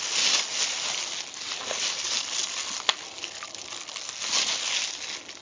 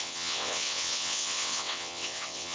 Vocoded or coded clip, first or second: second